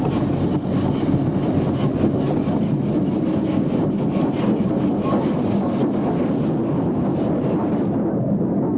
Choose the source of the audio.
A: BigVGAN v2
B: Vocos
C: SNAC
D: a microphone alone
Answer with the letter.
D